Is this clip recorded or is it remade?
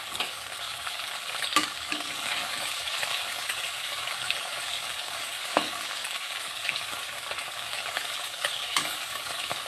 remade